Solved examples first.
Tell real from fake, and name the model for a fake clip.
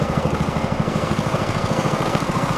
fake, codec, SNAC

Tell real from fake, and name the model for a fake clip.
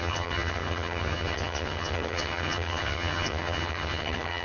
fake, vocoder, HiFi-GAN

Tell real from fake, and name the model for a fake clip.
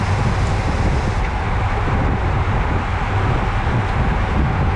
real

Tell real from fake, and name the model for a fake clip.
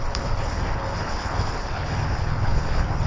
fake, codec, HILCodec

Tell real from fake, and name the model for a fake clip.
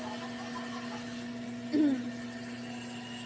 real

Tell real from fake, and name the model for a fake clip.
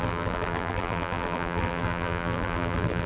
fake, vocoder, BigVGAN v2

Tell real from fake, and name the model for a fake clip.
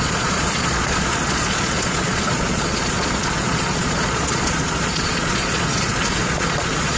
fake, vocoder, Vocos